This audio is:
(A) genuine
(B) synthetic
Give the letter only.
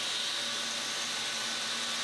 A